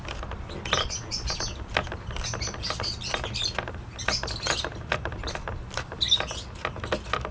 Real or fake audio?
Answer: real